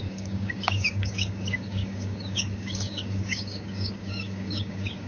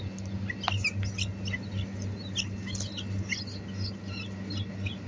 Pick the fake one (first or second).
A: first